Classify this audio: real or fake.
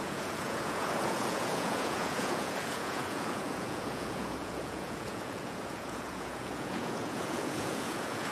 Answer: fake